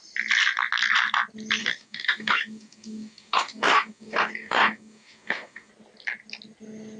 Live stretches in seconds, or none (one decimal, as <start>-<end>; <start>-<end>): 0.0-1.6; 5.7-7.0